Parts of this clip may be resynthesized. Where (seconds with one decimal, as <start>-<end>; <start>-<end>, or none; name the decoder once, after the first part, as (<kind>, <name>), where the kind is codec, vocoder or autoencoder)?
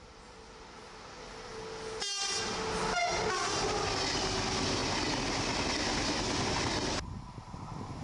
none